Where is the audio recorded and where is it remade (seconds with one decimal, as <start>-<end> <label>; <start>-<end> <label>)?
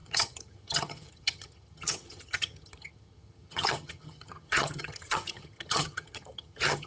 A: 0.0-6.9 remade